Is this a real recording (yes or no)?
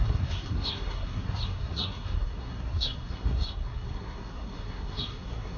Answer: no